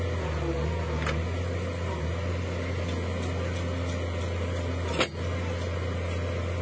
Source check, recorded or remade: recorded